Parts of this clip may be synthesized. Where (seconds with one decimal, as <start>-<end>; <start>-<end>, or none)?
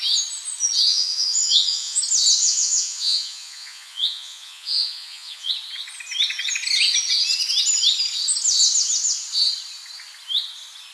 0.9-2.0; 2.4-5.5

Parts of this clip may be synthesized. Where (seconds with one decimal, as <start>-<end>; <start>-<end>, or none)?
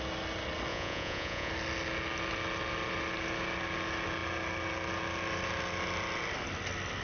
0.7-1.5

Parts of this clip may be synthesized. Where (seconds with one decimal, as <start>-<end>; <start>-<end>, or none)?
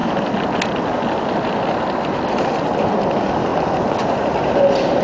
none